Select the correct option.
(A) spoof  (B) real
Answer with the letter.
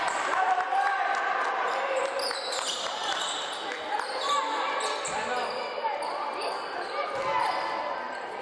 B